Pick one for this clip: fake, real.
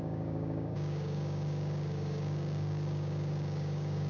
fake